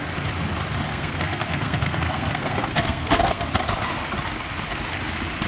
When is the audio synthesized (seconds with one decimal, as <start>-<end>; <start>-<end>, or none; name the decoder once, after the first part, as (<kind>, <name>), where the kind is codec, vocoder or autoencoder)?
0.9-3.6 (codec, SNAC)